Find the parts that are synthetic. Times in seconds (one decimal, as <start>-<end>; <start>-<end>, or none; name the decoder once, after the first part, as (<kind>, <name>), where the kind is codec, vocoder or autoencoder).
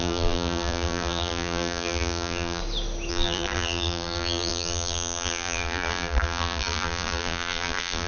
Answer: 0.0-2.6 (vocoder, BigVGAN v2); 3.1-8.1